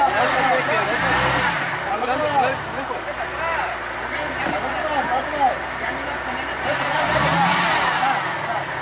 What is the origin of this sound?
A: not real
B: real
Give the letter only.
B